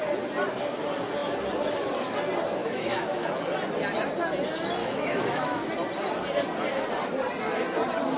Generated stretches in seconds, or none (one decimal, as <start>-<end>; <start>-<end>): 2.6-3.3; 4.8-5.7